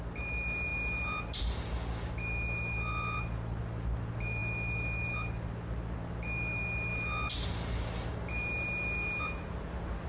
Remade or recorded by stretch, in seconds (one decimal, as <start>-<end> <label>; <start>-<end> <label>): 0.0-10.1 recorded